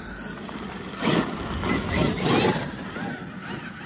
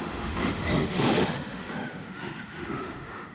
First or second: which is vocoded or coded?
second